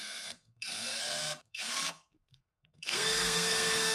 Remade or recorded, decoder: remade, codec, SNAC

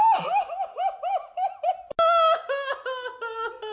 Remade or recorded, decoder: recorded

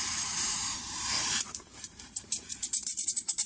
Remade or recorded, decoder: remade, vocoder, BigVGAN v2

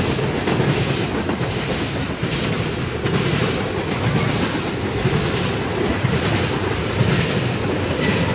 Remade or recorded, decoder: recorded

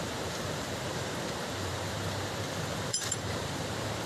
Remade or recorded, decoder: remade, vocoder, BigVGAN v2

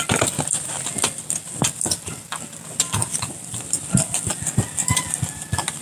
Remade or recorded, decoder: recorded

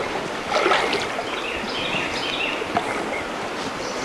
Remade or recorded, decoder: recorded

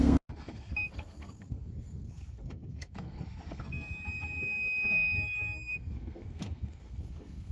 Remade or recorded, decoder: remade, codec, SNAC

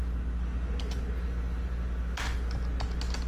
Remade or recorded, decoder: recorded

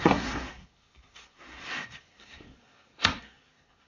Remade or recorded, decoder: remade, codec, SNAC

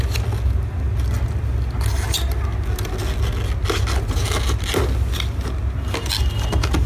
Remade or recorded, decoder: recorded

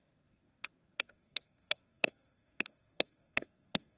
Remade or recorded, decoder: remade, codec, SNAC